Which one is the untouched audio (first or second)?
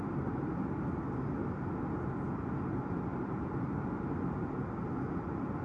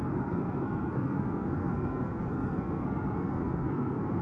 first